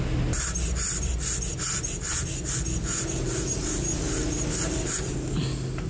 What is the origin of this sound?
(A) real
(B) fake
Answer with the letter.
A